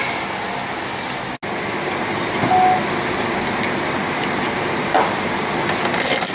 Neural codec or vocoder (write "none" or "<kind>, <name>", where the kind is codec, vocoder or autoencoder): none